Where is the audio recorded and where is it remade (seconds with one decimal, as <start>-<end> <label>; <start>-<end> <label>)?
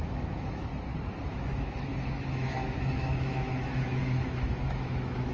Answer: 0.0-0.7 remade; 0.7-1.2 recorded; 1.2-5.3 remade